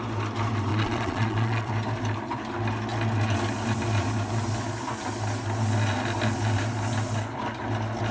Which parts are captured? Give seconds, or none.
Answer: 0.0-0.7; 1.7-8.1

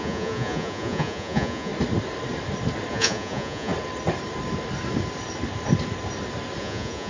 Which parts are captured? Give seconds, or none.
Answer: 1.7-2.9; 3.7-6.6

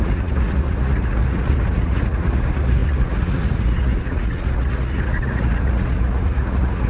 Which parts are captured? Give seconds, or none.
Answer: none

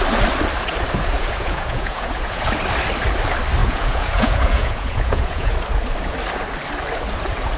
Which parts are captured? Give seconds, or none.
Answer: 0.0-1.1; 2.4-3.6; 5.5-7.6